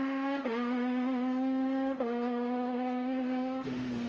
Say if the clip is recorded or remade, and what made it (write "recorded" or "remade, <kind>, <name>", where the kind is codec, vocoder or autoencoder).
remade, autoencoder, DAC-VAE